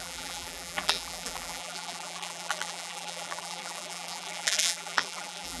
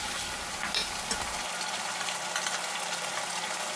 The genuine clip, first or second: second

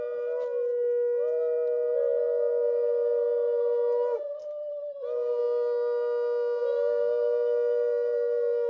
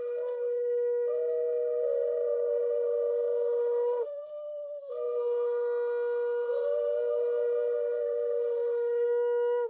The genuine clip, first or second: first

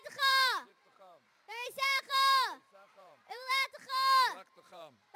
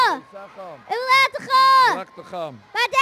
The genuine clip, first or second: second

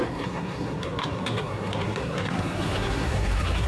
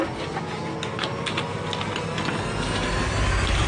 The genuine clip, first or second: second